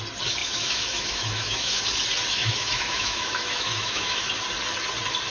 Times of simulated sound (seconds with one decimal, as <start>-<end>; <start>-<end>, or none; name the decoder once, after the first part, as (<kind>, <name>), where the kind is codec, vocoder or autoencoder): 0.4-1.8 (autoencoder, DAC-VAE); 2.3-4.3